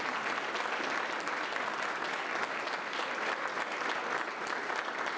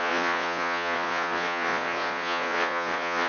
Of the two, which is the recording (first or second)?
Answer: first